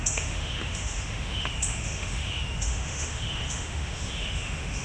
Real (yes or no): no